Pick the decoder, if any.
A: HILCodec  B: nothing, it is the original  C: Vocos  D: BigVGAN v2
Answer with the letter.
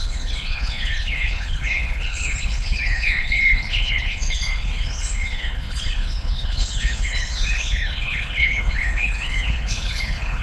A